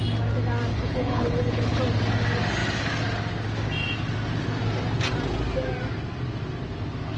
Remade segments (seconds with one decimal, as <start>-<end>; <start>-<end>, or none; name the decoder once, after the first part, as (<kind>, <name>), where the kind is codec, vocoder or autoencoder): 0.7-1.8 (codec, HILCodec)